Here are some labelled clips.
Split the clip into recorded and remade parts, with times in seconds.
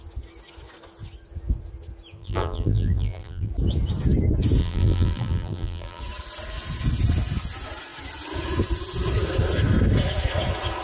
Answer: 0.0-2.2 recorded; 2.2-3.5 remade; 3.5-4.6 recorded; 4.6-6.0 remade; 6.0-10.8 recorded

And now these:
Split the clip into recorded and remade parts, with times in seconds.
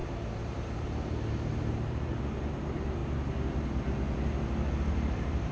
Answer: 0.0-3.0 remade; 3.0-4.9 recorded; 4.9-5.5 remade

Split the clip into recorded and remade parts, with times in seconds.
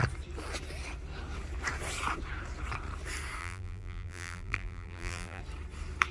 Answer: 0.0-3.4 recorded; 3.4-5.4 remade; 5.4-6.1 recorded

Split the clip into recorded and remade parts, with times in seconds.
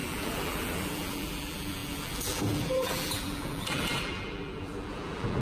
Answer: 0.0-5.4 remade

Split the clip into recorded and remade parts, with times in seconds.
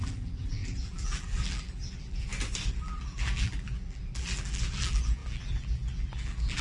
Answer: 0.0-2.3 remade; 2.3-2.8 recorded; 2.8-6.6 remade